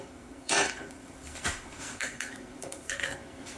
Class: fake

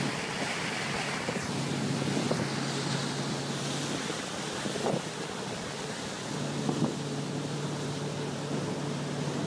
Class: real